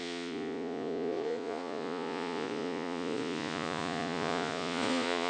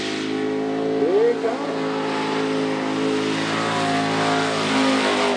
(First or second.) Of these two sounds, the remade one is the first